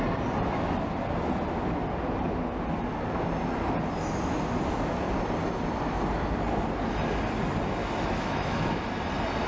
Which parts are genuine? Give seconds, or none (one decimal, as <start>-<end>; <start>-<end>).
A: 0.0-7.8; 8.7-9.5